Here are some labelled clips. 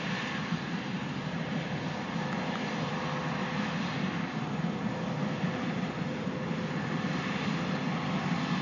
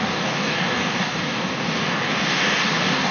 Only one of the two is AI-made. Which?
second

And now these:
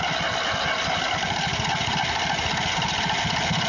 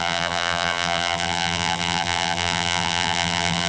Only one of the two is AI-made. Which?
second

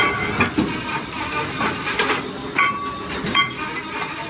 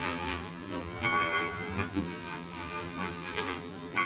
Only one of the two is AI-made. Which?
second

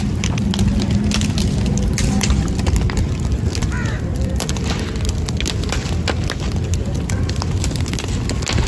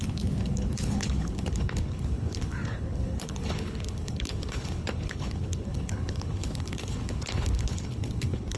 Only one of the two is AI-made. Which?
second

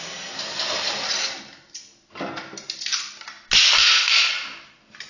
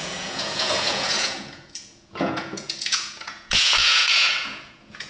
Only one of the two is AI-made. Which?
second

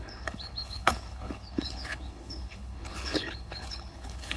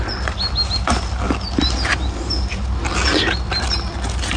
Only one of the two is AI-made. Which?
first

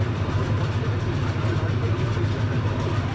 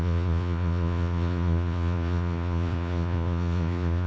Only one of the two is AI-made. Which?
second